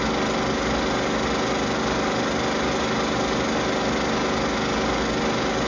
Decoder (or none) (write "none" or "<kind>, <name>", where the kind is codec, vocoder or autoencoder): none